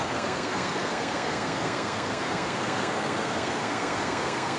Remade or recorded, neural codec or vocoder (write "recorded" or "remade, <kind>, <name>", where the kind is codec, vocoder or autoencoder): remade, codec, SNAC